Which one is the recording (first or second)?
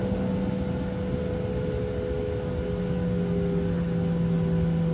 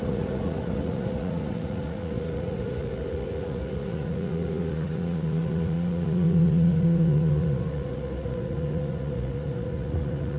first